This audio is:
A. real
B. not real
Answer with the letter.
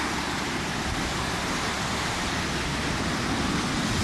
A